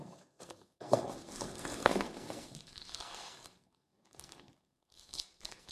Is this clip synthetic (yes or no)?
yes